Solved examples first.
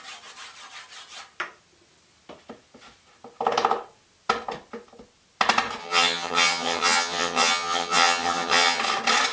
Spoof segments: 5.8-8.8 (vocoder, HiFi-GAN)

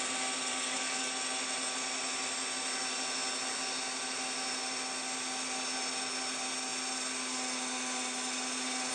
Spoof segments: 0.5-1.1 (codec, DAC)